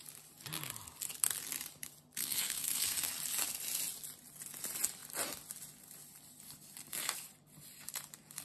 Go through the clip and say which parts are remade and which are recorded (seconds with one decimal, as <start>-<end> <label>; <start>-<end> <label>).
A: 0.0-2.2 recorded; 2.2-3.1 remade; 3.1-8.4 recorded